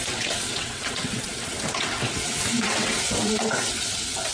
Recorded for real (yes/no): no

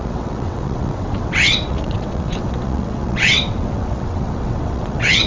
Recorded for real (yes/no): no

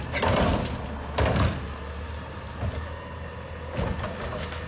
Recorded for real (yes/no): yes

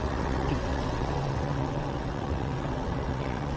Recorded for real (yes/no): no